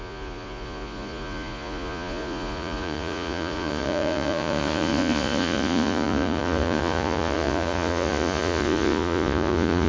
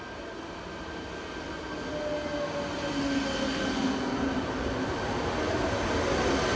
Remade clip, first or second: first